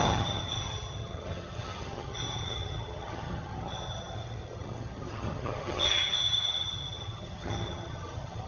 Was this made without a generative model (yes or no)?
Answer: no